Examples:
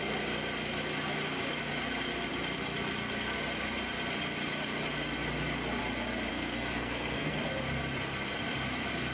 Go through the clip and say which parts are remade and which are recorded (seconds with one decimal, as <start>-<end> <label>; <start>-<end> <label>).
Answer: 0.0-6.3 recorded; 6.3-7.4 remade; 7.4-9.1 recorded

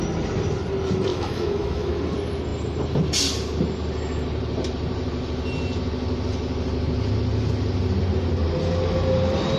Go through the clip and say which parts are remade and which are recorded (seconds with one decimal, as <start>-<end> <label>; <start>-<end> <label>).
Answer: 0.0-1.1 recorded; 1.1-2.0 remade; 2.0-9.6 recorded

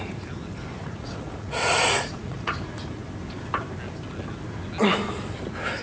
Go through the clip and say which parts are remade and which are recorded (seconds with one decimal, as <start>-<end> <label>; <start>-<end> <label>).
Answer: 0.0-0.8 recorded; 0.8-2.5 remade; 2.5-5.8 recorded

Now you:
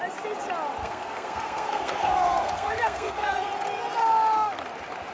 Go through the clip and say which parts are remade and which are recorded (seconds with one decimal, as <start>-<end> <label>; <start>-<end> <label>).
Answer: 0.0-0.8 recorded; 0.8-3.5 remade; 3.5-4.0 recorded; 4.0-4.6 remade; 4.6-5.1 recorded

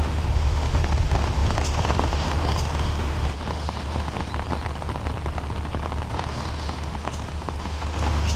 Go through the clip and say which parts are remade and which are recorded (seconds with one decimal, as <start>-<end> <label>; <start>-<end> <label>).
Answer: 0.0-4.3 remade; 4.3-6.1 recorded; 6.1-8.4 remade

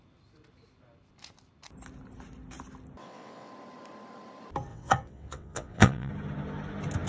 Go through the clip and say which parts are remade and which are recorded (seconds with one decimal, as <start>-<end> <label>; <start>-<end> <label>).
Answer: 0.0-3.0 recorded; 3.0-3.5 remade; 3.5-4.7 recorded; 4.7-6.1 remade; 6.1-7.1 recorded